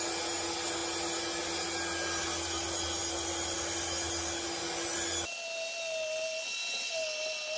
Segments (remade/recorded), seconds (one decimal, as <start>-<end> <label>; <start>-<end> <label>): 0.0-7.6 recorded